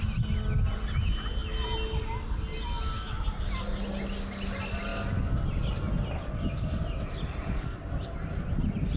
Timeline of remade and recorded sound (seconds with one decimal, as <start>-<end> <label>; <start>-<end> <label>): 0.0-9.0 recorded